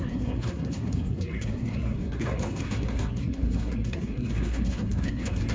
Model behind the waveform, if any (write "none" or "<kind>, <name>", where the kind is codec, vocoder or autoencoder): codec, SNAC